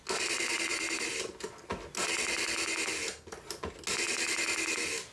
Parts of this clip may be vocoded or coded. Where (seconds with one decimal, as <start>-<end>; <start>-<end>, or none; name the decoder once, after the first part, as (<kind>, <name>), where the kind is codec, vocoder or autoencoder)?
0.7-1.2 (vocoder, BigVGAN v2)